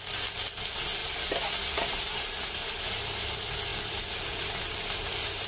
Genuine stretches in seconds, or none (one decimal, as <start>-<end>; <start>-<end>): 0.0-3.7; 4.2-5.5

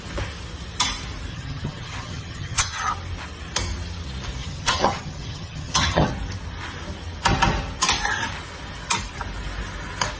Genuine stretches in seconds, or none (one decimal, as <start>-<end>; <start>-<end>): 0.0-1.3; 2.9-4.4; 6.1-10.2

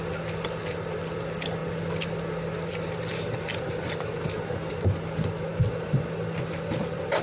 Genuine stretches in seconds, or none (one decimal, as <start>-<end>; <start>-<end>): 0.0-7.2

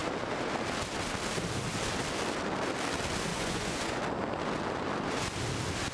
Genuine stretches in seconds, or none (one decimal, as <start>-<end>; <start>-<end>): 0.0-3.3; 4.0-5.9